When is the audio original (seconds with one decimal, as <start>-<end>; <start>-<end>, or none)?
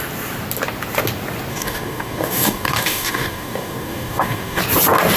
0.0-1.5; 4.6-5.2